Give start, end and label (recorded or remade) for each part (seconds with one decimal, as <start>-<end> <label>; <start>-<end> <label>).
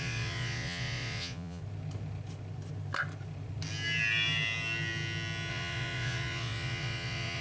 0.0-1.6 remade; 1.6-5.5 recorded; 5.5-7.4 remade